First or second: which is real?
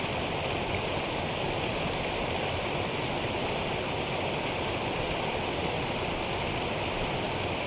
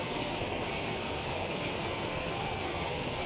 first